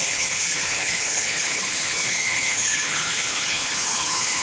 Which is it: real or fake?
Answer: fake